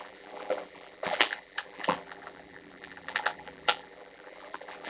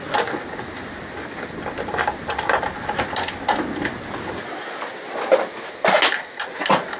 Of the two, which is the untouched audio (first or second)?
second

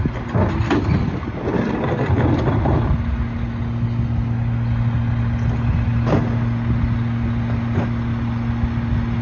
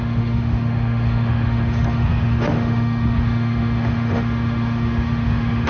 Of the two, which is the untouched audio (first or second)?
first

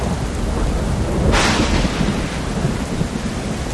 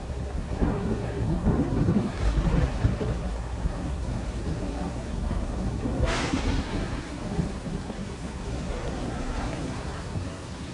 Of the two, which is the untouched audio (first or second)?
first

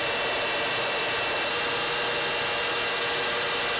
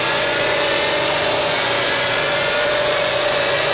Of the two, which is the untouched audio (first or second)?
first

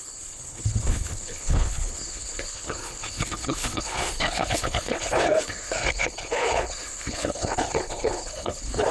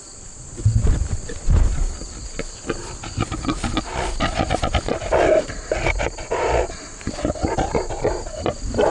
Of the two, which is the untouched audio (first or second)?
second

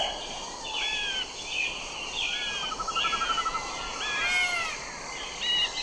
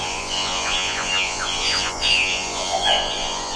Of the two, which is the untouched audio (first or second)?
first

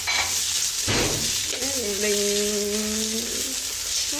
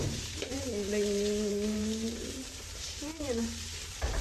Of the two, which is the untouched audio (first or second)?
first